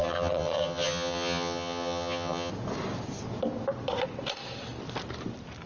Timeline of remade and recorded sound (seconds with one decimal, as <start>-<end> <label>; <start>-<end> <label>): 0.0-2.5 remade; 2.5-5.7 recorded

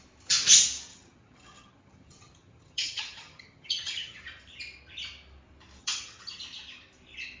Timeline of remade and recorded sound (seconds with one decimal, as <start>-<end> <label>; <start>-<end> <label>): 0.0-0.9 recorded; 0.9-4.2 remade; 4.2-5.8 recorded; 5.8-6.4 remade; 6.4-7.4 recorded

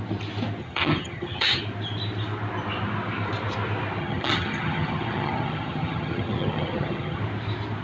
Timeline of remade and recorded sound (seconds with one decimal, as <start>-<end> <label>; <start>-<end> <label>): 0.0-0.6 recorded; 0.6-1.6 remade; 1.6-4.0 recorded; 4.0-7.2 remade; 7.2-7.8 recorded

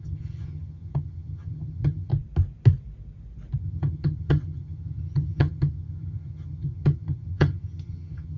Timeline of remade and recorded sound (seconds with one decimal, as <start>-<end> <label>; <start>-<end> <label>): 0.0-2.1 remade; 2.1-3.6 recorded; 3.6-8.4 remade

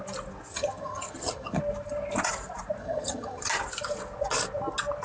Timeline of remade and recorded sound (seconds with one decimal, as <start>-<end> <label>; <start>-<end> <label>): 0.0-0.5 recorded; 0.5-1.6 remade; 1.6-2.8 recorded; 2.8-3.5 remade; 3.5-5.0 recorded

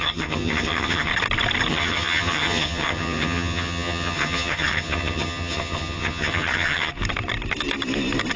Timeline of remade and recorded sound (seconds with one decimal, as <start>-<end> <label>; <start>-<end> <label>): 0.0-1.1 remade; 1.1-1.7 recorded; 1.7-6.9 remade; 6.9-8.4 recorded